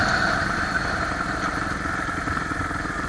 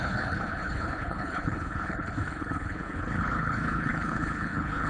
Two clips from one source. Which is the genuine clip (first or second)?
first